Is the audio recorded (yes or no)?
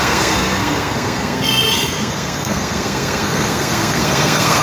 no